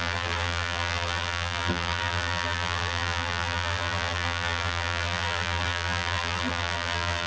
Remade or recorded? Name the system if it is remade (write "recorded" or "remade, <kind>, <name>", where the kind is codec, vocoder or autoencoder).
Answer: remade, vocoder, BigVGAN v2